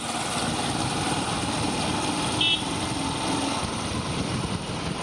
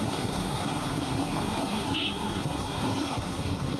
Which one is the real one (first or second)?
first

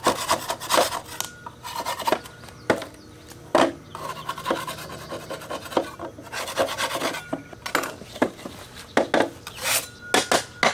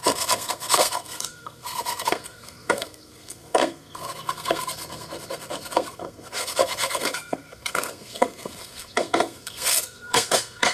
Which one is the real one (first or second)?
first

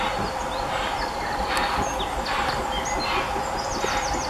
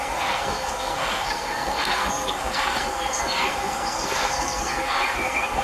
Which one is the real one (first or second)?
first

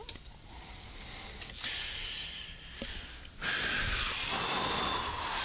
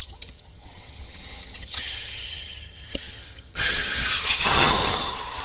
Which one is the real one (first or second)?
first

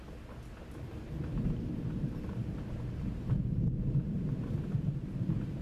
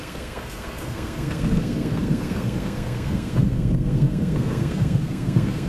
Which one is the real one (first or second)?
first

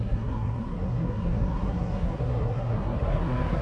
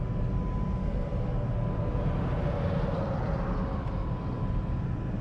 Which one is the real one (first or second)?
second